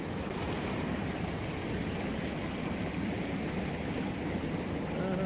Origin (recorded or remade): recorded